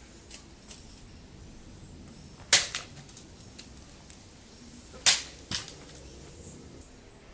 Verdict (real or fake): real